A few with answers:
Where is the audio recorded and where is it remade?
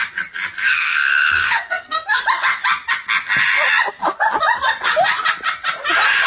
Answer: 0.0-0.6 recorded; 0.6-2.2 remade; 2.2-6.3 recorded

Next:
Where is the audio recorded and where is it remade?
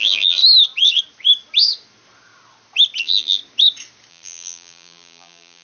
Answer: 0.0-0.4 remade; 0.4-3.0 recorded; 3.0-3.4 remade; 3.4-4.1 recorded; 4.1-5.6 remade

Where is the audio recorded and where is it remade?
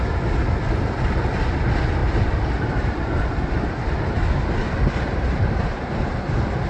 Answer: 0.0-2.0 recorded; 2.0-3.5 remade; 3.5-4.6 recorded; 4.6-6.3 remade; 6.3-6.7 recorded